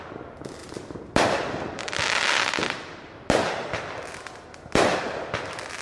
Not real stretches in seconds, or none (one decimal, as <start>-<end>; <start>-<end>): none